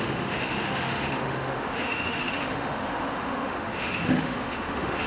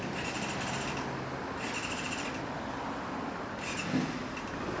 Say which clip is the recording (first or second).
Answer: second